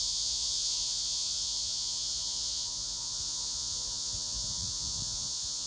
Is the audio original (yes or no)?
no